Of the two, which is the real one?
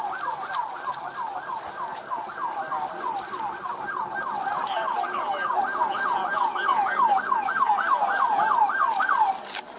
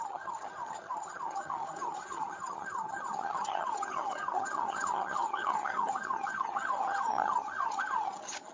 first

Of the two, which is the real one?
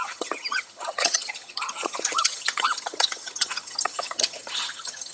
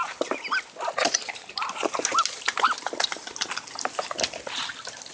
second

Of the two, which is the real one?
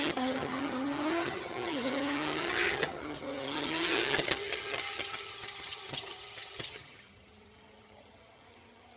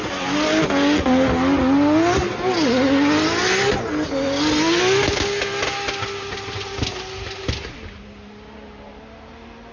second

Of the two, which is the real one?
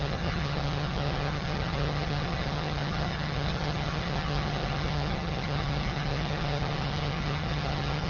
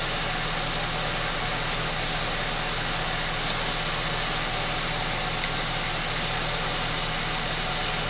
second